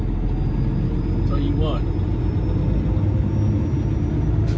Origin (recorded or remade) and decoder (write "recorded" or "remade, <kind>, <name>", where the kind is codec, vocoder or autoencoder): recorded